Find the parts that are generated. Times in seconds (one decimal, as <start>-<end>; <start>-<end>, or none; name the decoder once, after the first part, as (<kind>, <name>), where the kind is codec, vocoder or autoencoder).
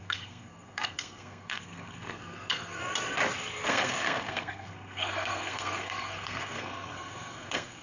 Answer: 0.0-2.8 (codec, SNAC); 3.7-7.8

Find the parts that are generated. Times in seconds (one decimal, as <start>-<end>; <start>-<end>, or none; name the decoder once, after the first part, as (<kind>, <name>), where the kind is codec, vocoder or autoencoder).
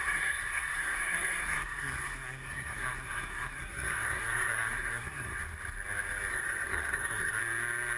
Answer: 0.0-5.4 (codec, SNAC); 6.3-7.4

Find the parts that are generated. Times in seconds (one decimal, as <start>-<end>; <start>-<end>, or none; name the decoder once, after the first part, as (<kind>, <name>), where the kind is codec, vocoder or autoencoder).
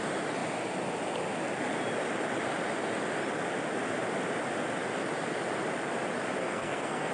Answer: 6.4-7.1 (codec, SNAC)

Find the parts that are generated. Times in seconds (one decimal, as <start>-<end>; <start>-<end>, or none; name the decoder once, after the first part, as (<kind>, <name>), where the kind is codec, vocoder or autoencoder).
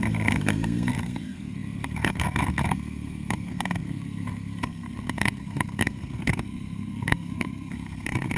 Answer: 0.0-8.4 (codec, SNAC)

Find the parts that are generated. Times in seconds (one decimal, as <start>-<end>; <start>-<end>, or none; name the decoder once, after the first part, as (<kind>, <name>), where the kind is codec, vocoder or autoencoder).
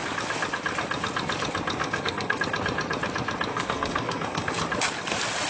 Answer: 1.8-2.4 (codec, SNAC); 3.5-4.5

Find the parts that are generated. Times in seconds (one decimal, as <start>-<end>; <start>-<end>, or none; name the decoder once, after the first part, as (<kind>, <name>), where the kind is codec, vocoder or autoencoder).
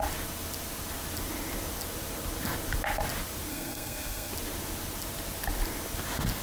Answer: 3.5-4.3 (codec, SNAC)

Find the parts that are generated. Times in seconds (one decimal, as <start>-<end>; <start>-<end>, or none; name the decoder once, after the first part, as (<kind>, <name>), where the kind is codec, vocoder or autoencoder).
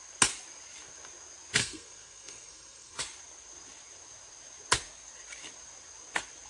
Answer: 1.6-3.0 (codec, SNAC)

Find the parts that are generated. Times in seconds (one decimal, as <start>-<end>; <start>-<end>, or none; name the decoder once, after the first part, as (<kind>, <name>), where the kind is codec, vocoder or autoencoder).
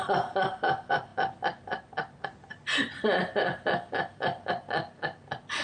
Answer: none